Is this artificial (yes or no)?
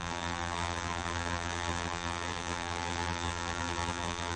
yes